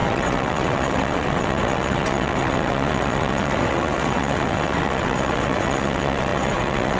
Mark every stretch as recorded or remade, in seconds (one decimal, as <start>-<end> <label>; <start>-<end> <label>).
0.0-7.0 remade

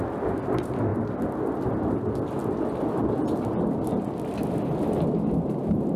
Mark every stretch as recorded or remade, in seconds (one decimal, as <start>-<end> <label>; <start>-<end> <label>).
0.0-6.0 recorded

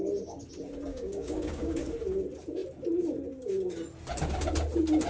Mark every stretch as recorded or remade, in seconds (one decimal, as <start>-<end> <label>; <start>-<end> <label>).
0.0-0.9 recorded; 0.9-1.8 remade; 1.8-5.1 recorded